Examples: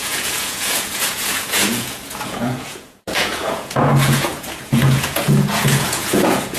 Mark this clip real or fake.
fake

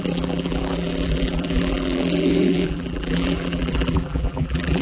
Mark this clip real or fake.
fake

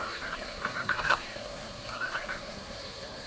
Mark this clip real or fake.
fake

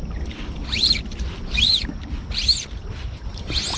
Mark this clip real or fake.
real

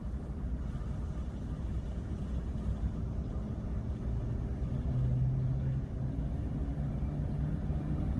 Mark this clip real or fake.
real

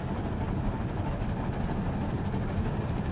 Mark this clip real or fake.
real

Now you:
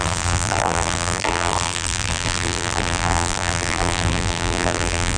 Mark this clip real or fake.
fake